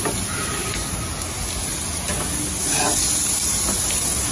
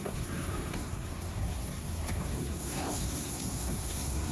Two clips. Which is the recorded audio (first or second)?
first